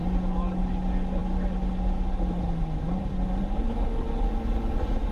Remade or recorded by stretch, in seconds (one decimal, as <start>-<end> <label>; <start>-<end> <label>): 0.0-5.1 recorded